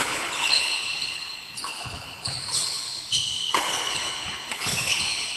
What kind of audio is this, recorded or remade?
remade